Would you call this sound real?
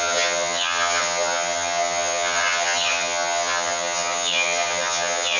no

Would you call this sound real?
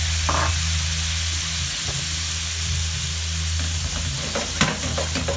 yes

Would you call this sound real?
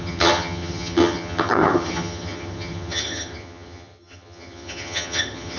no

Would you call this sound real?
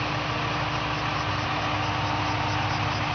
yes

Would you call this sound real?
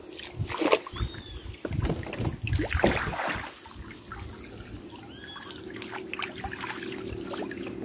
yes